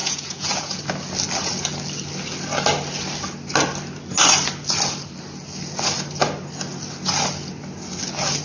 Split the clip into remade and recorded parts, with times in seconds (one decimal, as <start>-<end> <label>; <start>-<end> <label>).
0.0-0.8 remade; 0.8-8.4 recorded